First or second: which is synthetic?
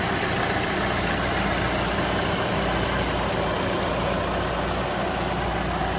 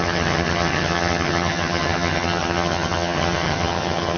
second